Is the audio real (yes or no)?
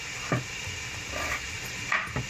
yes